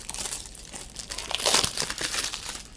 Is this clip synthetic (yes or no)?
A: yes